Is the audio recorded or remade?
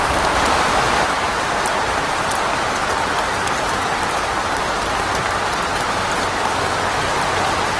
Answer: recorded